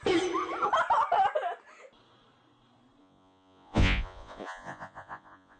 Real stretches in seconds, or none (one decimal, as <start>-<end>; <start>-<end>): 0.0-3.0